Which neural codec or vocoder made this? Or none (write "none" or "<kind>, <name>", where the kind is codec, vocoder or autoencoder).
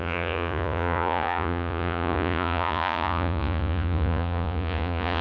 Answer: vocoder, Vocos